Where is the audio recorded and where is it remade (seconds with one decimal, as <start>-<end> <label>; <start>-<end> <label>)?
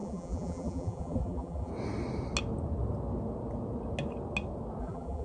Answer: 0.0-1.7 remade; 1.7-4.8 recorded; 4.8-5.2 remade